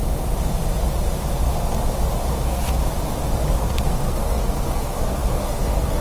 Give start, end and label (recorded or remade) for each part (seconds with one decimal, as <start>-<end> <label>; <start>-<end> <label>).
0.0-2.4 recorded; 2.4-2.8 remade; 2.8-3.6 recorded; 3.6-6.0 remade